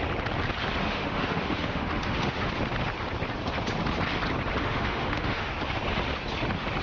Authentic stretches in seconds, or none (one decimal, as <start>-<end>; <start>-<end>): 0.0-0.8; 2.5-4.6; 5.5-6.8